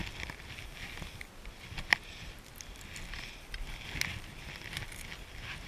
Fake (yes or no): no